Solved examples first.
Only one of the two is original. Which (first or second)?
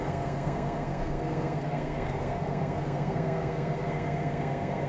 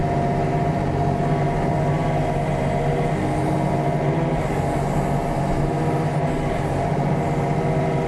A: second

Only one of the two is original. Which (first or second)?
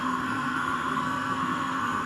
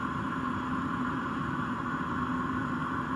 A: second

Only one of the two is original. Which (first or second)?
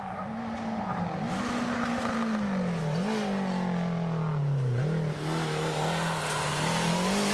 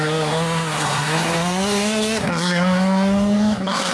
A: first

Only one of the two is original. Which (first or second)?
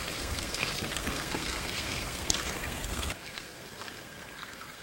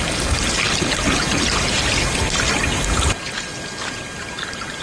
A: second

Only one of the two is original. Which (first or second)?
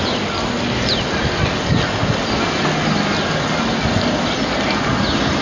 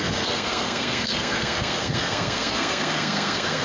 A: first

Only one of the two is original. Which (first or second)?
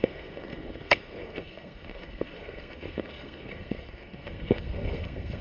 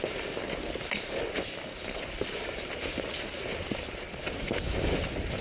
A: second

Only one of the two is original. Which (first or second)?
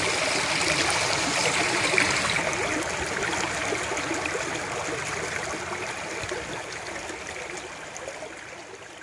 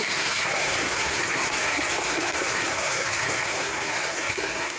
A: first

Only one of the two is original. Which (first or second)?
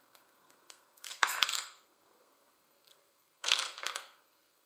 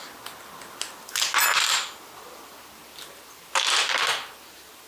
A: second